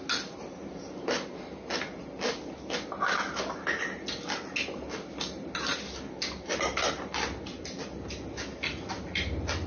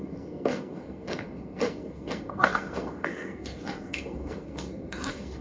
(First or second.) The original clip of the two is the first